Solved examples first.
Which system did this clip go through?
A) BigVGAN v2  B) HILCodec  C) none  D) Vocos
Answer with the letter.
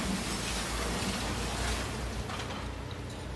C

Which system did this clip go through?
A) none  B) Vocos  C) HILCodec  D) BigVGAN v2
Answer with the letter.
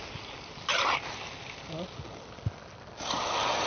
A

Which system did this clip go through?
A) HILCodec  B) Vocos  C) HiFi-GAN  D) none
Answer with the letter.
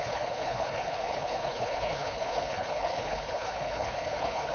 A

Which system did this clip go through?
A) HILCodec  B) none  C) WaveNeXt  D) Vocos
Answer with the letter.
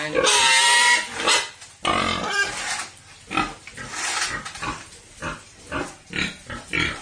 B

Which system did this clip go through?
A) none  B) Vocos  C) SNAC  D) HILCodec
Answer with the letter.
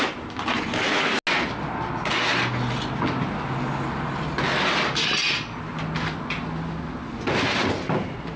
A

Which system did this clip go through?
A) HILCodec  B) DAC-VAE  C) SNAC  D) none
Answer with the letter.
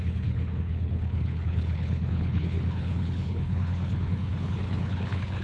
A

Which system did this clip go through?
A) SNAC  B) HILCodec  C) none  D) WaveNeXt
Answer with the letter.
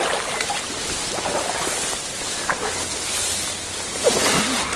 C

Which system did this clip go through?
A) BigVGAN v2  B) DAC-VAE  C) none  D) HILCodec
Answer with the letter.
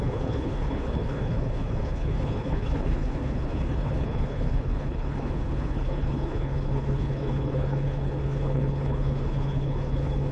D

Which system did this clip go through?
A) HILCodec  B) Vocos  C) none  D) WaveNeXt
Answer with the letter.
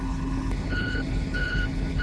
A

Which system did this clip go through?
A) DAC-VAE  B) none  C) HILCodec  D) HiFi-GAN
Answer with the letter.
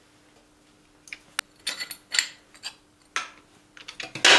B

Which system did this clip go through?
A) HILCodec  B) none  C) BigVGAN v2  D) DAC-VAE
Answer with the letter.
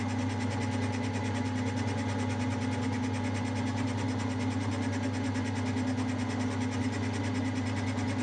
B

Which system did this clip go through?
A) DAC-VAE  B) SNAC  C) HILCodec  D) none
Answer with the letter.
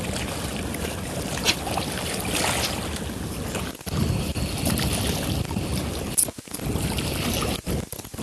D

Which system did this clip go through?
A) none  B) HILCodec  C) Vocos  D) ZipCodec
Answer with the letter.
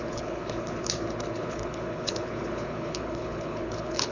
B